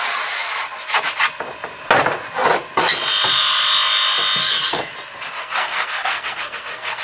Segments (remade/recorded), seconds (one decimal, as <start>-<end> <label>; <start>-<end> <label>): 0.0-4.4 recorded; 4.4-4.9 remade; 4.9-5.4 recorded; 5.4-7.0 remade